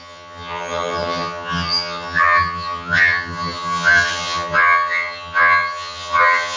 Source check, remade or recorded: remade